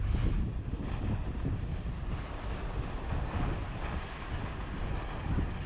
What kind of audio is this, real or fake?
real